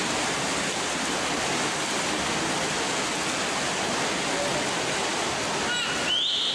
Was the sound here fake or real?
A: real